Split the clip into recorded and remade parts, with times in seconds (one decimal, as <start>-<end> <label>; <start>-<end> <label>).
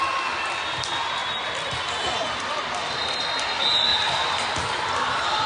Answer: 0.0-3.9 recorded; 3.9-4.8 remade; 4.8-5.5 recorded